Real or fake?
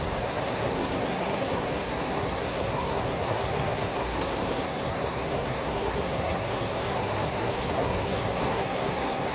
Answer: fake